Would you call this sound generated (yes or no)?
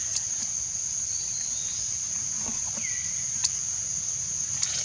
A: no